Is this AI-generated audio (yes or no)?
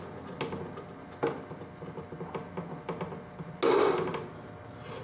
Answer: no